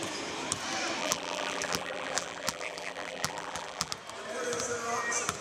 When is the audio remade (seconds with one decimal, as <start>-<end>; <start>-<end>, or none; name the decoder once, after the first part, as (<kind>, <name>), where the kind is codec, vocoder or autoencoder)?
1.0-3.9 (vocoder, BigVGAN v2)

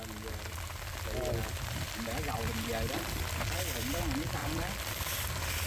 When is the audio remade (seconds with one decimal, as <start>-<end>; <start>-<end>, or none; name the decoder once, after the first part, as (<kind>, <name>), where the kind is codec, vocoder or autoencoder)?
4.4-5.0 (vocoder, BigVGAN v2)

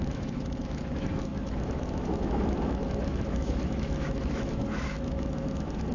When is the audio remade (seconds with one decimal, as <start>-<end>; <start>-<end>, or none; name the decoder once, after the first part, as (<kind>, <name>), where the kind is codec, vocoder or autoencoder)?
0.0-5.9 (autoencoder, DAC-VAE)